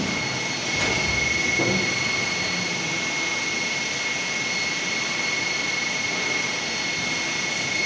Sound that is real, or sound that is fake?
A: real